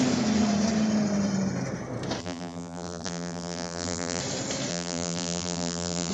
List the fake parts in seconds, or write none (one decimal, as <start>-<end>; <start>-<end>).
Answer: 2.2-4.2; 4.7-6.1